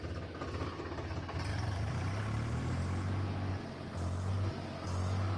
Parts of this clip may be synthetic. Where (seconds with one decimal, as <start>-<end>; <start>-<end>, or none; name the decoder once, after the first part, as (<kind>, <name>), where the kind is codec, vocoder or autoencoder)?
1.5-2.7 (vocoder, BigVGAN v2)